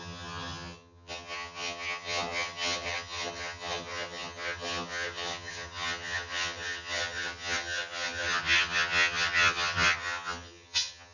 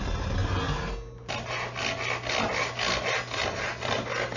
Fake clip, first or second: first